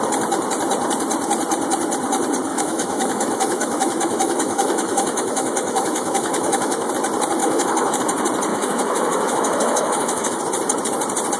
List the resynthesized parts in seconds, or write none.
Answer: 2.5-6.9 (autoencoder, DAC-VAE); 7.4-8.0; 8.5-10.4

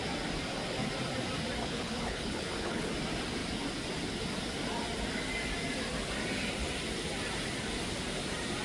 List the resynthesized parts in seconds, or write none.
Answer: 1.6-2.9 (codec, HILCodec)

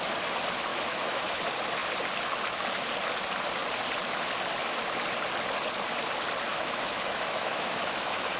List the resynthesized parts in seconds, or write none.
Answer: 0.7-1.4 (autoencoder, DAC-VAE); 6.5-8.4